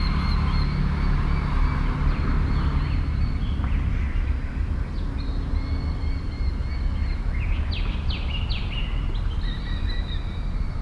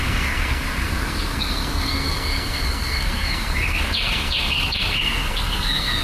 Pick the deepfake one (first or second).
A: second